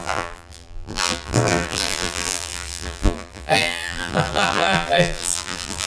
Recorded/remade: remade